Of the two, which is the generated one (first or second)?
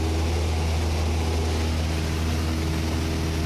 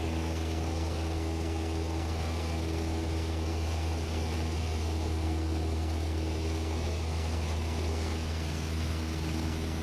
second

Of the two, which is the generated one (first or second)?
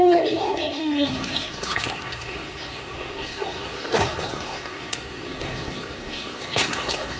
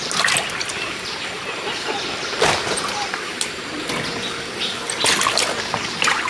first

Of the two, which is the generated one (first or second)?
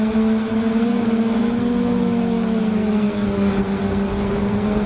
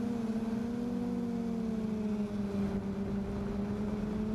first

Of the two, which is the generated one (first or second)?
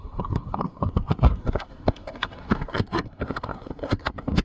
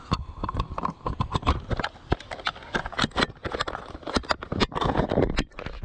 first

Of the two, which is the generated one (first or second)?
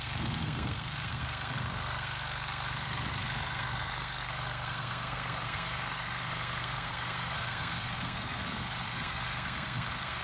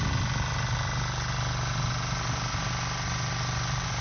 first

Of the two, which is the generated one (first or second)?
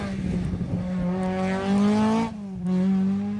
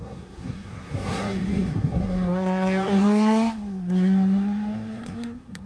second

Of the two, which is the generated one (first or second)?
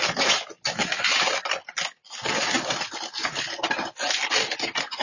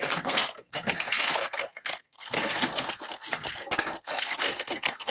second